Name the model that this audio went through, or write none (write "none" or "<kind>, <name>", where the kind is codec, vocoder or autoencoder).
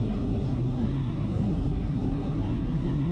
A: codec, SNAC